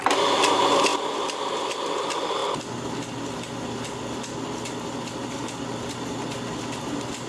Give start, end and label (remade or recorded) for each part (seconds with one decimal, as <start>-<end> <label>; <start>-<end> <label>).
0.0-7.3 recorded